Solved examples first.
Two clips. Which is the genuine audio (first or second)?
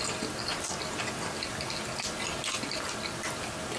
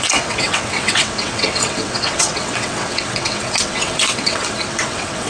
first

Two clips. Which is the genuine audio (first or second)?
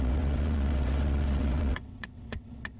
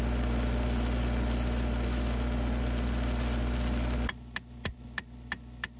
second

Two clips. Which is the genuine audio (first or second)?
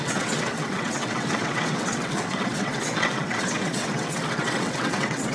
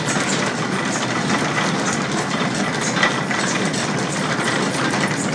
second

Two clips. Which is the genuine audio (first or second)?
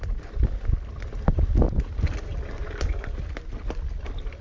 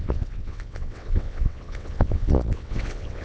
first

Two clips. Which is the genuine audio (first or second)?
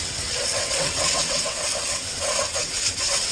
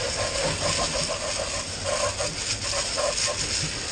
second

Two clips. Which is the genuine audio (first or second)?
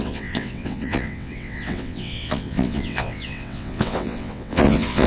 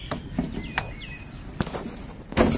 second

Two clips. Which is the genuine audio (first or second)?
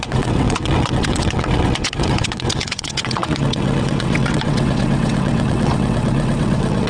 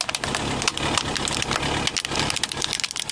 second